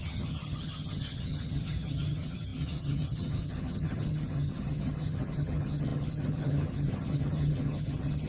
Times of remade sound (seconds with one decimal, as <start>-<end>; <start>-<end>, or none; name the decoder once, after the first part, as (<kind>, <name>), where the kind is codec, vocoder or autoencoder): 0.0-8.3 (vocoder, HiFi-GAN)